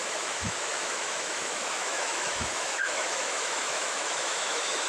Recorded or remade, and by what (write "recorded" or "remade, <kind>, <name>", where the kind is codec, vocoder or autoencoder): remade, autoencoder, DAC-VAE